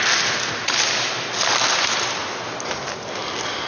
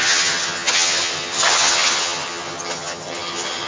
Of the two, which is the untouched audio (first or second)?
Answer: first